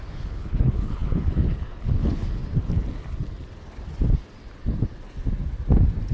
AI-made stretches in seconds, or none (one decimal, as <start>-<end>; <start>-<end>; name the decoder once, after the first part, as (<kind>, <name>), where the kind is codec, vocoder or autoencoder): 0.0-2.4 (codec, HILCodec)